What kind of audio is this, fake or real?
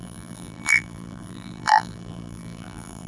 fake